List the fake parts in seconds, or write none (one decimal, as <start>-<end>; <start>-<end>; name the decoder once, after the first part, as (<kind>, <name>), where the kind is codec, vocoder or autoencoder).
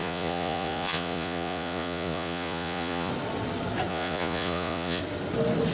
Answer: 0.0-3.1 (vocoder, Vocos); 3.9-5.0